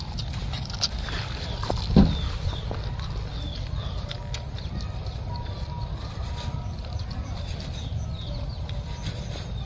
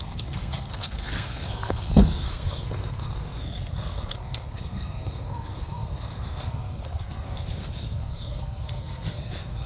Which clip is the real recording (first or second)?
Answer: first